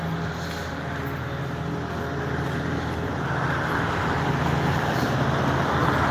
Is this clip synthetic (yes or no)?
no